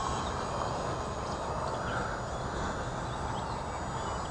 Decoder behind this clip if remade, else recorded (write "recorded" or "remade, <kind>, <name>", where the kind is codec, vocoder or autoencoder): recorded